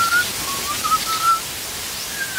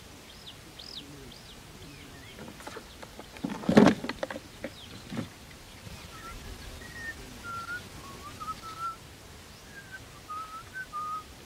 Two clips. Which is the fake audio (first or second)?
first